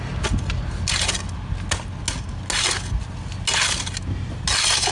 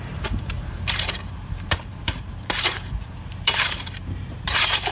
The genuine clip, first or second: first